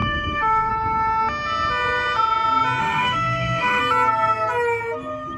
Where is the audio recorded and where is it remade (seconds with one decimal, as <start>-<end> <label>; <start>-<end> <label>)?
0.0-0.7 remade; 0.7-2.8 recorded; 2.8-3.8 remade; 3.8-5.4 recorded

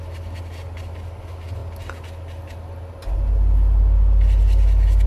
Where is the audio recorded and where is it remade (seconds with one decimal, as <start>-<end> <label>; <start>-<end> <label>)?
0.0-5.1 recorded

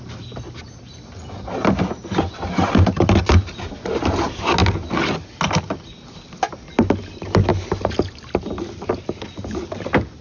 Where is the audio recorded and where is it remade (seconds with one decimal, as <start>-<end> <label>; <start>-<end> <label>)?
0.0-10.2 recorded

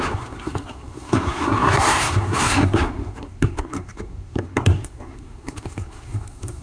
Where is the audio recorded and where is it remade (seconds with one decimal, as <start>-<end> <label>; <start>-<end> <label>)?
0.0-6.6 remade

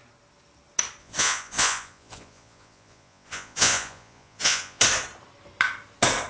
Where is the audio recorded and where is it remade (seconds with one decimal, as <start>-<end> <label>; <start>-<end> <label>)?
0.0-1.0 recorded; 1.0-4.8 remade; 4.8-6.3 recorded

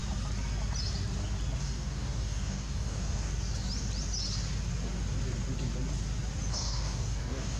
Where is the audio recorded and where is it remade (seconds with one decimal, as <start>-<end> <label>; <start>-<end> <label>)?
0.0-1.6 recorded; 1.6-3.3 remade; 3.3-6.5 recorded; 6.5-7.6 remade